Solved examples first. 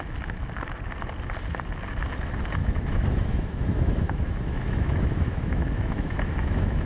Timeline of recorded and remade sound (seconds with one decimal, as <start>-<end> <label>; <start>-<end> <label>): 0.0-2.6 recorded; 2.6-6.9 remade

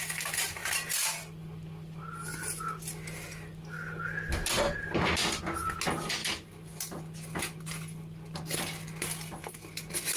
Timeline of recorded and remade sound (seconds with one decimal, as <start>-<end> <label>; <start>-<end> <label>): 0.0-10.2 recorded

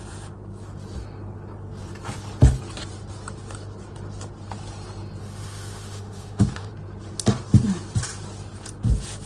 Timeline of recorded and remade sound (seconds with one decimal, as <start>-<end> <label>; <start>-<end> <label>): 0.0-5.2 recorded; 5.2-6.7 remade; 6.7-9.3 recorded

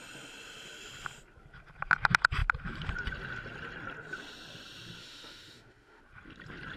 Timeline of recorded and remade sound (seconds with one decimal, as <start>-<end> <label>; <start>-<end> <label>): 0.0-5.0 recorded; 5.0-6.0 remade; 6.0-6.8 recorded

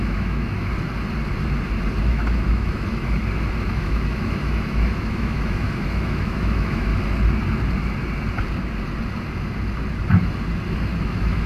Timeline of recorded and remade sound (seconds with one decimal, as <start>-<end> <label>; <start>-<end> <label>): 0.0-0.7 remade; 0.7-2.0 recorded; 2.0-3.2 remade; 3.2-3.7 recorded; 3.7-6.9 remade; 6.9-11.0 recorded; 11.0-11.5 remade